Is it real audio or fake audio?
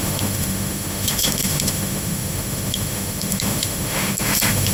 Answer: fake